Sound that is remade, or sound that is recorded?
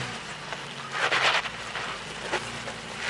recorded